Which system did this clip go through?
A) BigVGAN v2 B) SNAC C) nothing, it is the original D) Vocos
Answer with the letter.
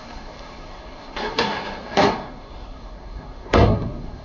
B